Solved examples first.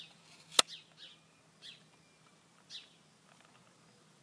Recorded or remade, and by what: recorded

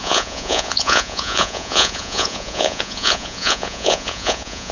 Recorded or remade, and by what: remade, vocoder, Vocos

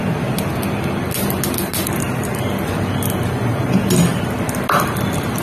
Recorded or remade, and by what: recorded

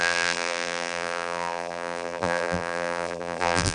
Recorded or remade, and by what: remade, vocoder, BigVGAN v2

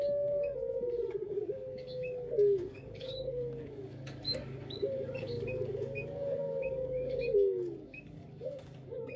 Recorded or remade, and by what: remade, codec, DAC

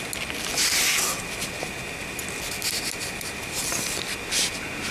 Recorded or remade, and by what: recorded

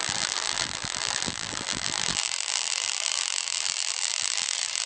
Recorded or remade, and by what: remade, vocoder, BigVGAN v2